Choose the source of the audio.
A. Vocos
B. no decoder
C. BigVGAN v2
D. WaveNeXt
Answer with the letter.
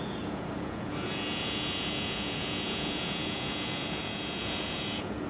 A